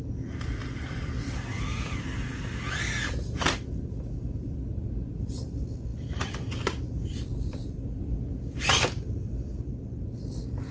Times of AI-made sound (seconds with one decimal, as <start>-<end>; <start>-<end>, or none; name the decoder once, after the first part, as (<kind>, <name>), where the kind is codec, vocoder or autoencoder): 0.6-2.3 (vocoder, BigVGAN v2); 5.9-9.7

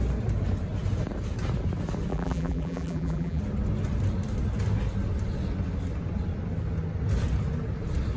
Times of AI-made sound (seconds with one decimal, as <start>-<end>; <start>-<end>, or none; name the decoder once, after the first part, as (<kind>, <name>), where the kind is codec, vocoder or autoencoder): 2.1-3.4 (vocoder, BigVGAN v2)

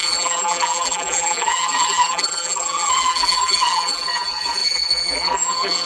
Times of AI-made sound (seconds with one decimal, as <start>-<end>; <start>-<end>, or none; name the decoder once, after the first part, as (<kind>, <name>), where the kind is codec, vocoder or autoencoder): 0.0-5.9 (vocoder, BigVGAN v2)